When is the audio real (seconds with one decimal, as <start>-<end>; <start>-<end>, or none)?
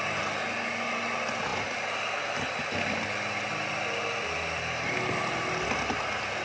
0.0-1.5; 5.3-6.4